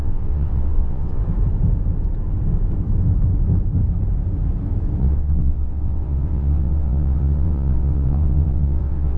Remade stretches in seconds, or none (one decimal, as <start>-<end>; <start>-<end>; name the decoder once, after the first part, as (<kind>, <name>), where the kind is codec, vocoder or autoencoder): 0.0-1.2 (vocoder, WaveNeXt); 5.0-9.2